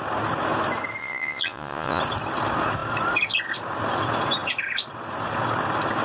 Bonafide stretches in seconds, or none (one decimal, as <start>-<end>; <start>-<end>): 0.0-1.0; 2.0-6.0